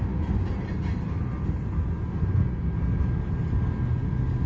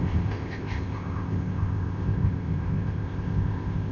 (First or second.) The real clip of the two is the first